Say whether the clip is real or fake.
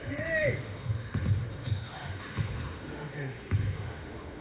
fake